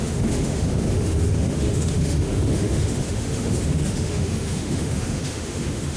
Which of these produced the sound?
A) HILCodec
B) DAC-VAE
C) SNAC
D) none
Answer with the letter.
B